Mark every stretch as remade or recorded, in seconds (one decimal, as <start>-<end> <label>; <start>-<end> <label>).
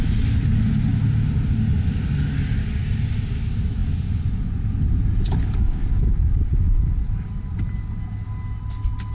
0.0-9.1 recorded